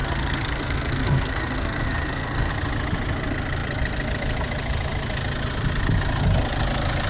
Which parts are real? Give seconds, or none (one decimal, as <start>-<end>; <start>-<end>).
2.5-7.1

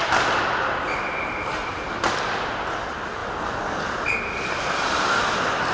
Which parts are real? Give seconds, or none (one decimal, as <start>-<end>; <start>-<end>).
0.0-5.7

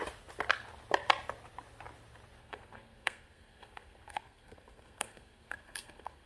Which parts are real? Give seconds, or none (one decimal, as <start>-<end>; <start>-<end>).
0.0-2.4